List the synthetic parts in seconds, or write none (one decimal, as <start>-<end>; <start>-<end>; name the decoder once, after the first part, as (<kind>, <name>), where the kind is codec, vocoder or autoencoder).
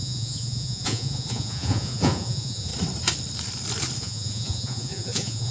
0.0-2.7 (vocoder, Vocos); 4.0-5.5